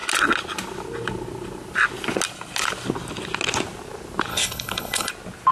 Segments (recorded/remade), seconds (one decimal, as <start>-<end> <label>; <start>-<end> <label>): 0.0-4.3 recorded; 4.3-5.1 remade; 5.1-5.5 recorded